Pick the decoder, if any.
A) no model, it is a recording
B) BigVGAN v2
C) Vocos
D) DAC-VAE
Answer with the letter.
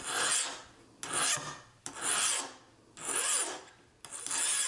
A